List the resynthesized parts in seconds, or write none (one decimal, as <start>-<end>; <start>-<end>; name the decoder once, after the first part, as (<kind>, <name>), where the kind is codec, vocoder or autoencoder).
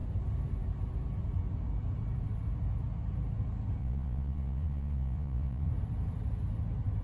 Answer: 3.8-5.7 (vocoder, Vocos)